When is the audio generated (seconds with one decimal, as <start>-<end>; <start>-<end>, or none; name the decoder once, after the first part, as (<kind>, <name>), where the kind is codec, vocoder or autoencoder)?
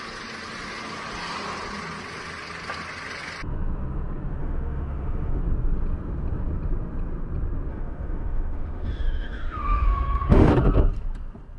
4.4-5.4 (autoencoder, DAC-VAE); 7.7-10.5